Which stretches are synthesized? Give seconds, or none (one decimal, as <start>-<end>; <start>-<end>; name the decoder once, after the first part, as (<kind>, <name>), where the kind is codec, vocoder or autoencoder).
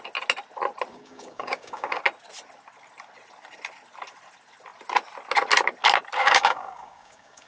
0.9-2.0 (codec, DAC); 6.2-7.5